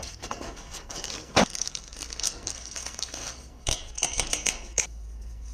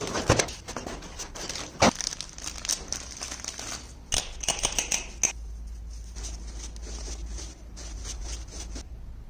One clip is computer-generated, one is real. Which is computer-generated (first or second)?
first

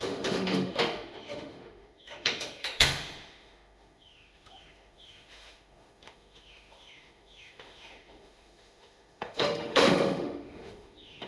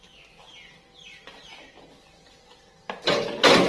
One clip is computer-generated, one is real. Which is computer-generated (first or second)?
first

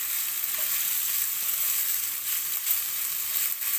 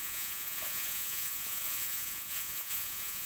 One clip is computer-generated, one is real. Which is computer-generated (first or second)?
second